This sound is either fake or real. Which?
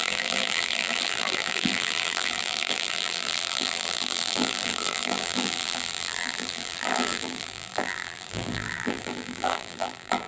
fake